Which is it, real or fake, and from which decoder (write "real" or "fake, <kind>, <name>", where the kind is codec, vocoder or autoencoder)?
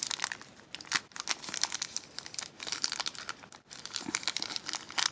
real